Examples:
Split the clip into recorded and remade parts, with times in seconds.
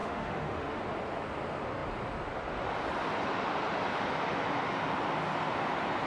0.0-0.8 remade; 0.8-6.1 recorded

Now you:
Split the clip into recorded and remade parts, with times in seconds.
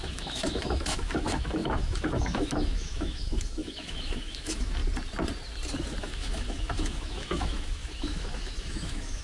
0.0-4.8 remade; 4.8-6.0 recorded; 6.0-9.2 remade